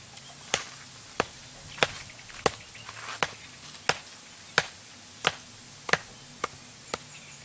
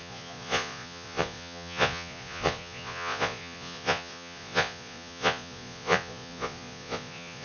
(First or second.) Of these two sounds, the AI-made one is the second